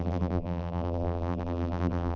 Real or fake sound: fake